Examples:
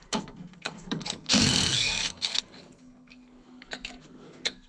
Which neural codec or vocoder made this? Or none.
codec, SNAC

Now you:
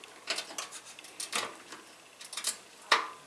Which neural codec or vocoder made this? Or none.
none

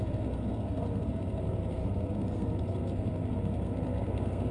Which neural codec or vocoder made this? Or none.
codec, SNAC